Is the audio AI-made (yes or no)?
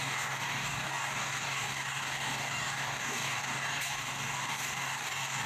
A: yes